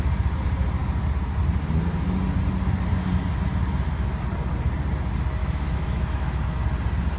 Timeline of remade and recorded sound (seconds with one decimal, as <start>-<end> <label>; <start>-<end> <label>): 0.0-5.4 recorded; 5.4-6.4 remade; 6.4-7.2 recorded